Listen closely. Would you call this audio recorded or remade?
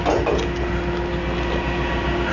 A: recorded